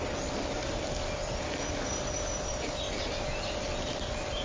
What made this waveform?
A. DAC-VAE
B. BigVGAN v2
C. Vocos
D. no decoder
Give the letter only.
D